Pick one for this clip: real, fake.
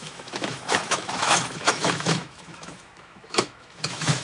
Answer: fake